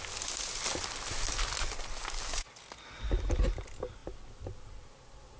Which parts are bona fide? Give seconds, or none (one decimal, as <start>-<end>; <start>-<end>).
0.0-5.4